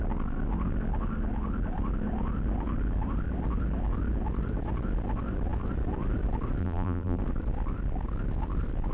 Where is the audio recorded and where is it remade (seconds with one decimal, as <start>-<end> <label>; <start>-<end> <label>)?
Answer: 0.0-6.6 recorded; 6.6-7.2 remade; 7.2-8.9 recorded

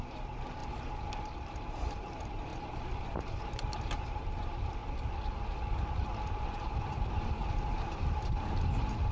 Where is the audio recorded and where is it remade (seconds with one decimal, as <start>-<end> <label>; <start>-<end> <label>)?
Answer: 0.0-0.6 remade; 0.6-1.2 recorded; 1.2-4.8 remade; 4.8-6.3 recorded; 6.3-9.1 remade

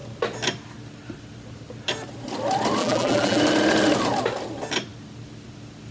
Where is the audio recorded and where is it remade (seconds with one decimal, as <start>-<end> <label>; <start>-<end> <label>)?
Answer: 0.0-2.8 recorded; 2.8-3.4 remade; 3.4-5.9 recorded

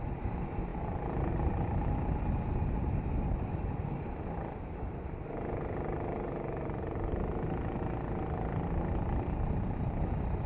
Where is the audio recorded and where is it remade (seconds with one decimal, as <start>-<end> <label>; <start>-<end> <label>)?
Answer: 0.0-10.5 recorded